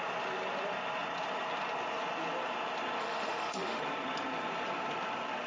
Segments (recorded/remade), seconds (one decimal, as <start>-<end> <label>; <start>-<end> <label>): 0.0-3.0 recorded; 3.0-3.8 remade; 3.8-5.5 recorded